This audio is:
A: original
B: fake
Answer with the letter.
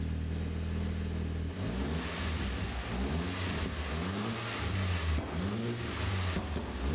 A